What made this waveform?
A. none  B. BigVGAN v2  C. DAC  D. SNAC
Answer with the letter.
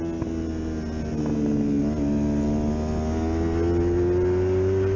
A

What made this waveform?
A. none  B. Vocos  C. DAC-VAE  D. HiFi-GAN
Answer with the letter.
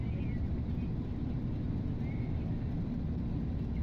A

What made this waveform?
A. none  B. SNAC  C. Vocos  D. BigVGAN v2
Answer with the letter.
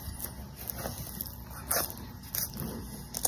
A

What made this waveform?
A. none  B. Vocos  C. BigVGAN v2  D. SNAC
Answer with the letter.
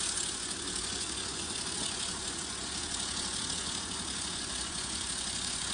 B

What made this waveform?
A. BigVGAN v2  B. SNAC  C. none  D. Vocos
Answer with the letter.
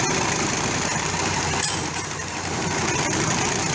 A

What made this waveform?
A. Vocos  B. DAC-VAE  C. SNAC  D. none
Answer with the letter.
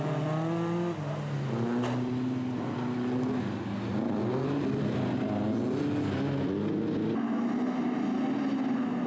D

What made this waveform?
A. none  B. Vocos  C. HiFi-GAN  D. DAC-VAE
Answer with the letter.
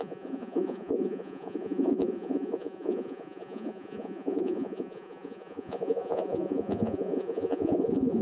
B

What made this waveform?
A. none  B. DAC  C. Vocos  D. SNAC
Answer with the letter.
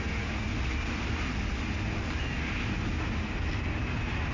A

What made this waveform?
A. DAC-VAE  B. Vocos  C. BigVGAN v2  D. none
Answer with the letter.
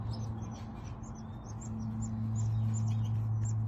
D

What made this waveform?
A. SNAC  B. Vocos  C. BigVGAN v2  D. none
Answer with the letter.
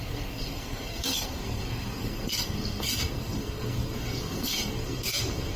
A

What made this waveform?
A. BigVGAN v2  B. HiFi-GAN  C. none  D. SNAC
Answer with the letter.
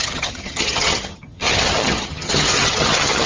B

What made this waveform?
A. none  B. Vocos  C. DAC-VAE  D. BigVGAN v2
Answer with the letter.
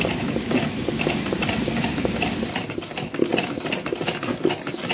A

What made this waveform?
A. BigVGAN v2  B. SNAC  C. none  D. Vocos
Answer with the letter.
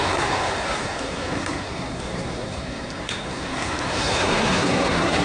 B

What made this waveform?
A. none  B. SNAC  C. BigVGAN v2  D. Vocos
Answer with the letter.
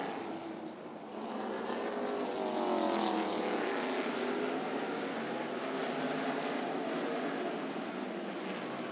A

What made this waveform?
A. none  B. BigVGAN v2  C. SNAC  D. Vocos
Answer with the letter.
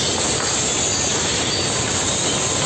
A